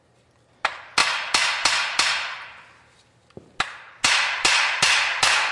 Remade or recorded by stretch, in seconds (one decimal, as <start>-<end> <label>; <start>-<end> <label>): 0.0-5.5 recorded